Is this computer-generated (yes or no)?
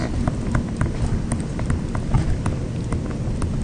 no